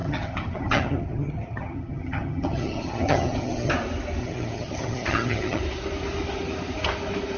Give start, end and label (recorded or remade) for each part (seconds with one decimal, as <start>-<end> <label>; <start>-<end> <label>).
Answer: 0.0-3.7 remade; 3.7-4.2 recorded; 4.2-5.6 remade; 5.6-7.4 recorded